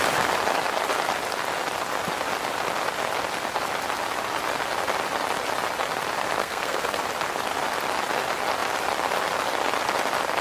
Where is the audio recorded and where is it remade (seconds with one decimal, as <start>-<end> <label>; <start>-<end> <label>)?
0.0-6.4 recorded; 6.4-7.0 remade; 7.0-10.4 recorded